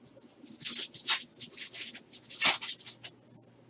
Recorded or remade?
recorded